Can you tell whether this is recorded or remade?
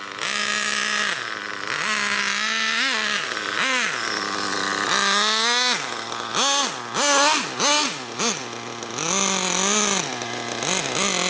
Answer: recorded